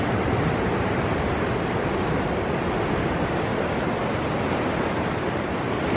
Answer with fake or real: real